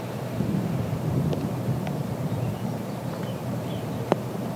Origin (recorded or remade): remade